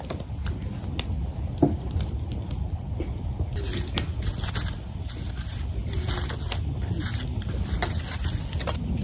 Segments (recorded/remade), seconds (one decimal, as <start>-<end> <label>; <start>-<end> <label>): 0.0-9.0 recorded